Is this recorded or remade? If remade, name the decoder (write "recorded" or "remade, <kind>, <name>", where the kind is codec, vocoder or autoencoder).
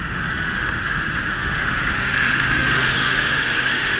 remade, autoencoder, DAC-VAE